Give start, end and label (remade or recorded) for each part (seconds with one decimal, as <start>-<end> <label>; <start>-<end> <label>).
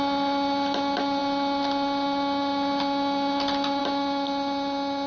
0.0-5.1 recorded